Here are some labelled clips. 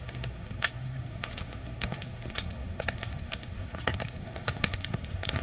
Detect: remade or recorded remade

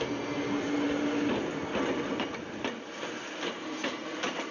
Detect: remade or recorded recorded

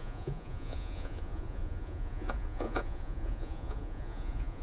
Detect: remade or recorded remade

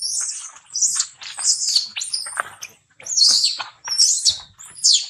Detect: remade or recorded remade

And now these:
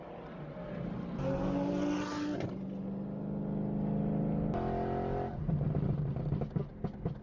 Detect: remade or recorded recorded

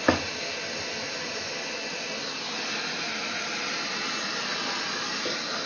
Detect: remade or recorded recorded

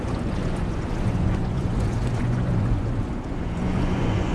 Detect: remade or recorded remade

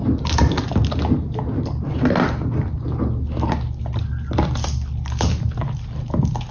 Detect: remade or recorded recorded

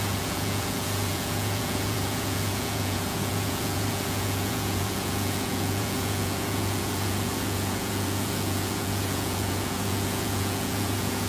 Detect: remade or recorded remade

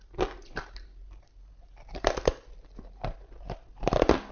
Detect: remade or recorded recorded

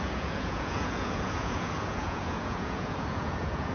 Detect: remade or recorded remade